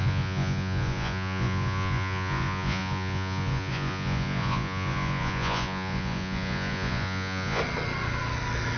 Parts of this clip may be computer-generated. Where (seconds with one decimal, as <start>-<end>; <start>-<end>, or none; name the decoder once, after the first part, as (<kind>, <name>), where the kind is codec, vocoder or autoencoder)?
0.0-7.6 (vocoder, Vocos)